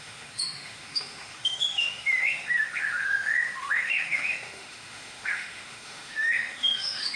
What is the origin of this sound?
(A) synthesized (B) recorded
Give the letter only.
A